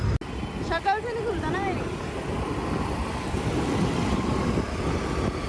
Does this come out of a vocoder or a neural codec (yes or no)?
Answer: no